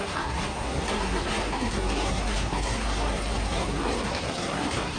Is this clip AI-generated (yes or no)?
yes